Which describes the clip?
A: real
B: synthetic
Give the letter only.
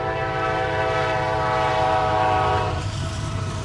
B